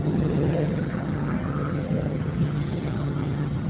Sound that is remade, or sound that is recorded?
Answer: remade